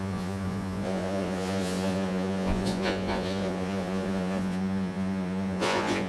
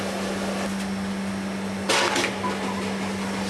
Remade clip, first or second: first